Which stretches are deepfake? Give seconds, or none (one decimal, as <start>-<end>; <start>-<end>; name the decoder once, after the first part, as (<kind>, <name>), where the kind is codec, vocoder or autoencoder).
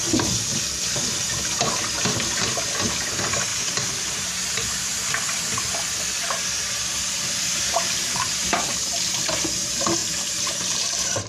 3.5-5.0 (vocoder, BigVGAN v2); 7.0-8.6; 10.0-11.3